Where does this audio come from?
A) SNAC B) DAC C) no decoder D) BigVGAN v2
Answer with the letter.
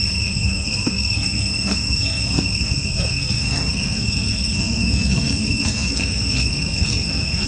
A